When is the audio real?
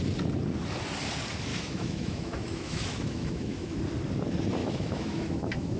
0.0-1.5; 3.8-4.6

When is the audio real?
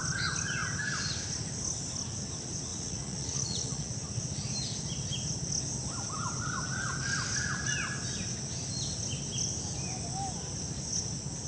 0.0-2.7; 3.9-11.5